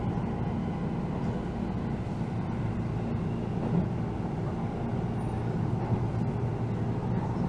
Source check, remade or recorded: recorded